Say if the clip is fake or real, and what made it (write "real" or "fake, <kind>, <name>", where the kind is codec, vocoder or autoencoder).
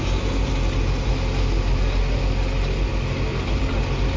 real